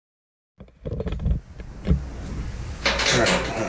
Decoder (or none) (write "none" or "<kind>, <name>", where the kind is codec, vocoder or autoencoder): none